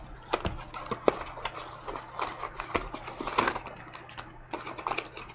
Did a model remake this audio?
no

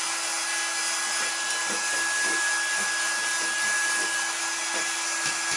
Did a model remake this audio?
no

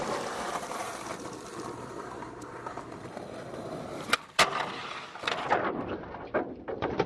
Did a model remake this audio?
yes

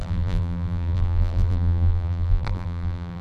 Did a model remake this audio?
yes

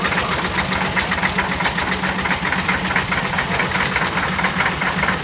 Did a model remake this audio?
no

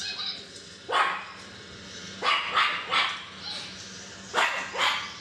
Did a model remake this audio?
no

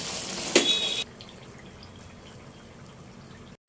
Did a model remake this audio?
no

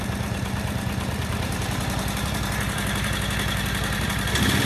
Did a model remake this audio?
yes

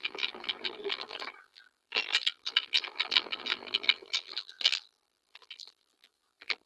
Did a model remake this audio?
yes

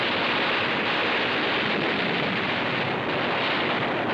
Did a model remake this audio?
no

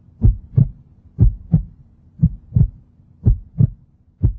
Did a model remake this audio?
yes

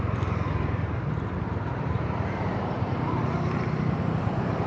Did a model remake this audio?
yes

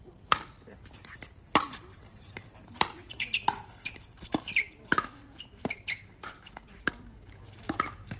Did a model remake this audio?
yes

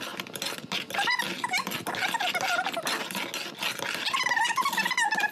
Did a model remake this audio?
no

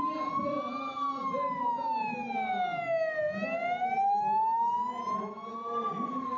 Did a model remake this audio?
no